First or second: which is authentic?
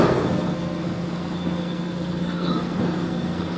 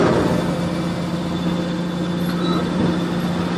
second